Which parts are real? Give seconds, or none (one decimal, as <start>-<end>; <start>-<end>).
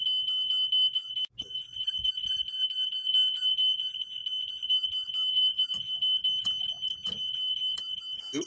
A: 0.0-8.5